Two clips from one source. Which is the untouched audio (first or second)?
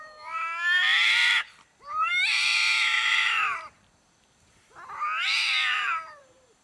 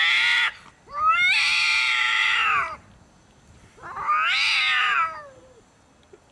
second